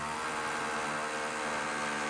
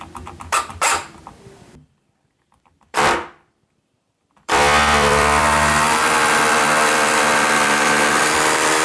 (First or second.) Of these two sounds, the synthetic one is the second